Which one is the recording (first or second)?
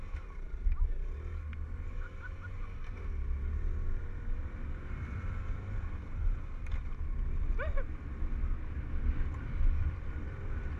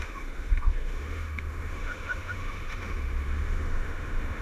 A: first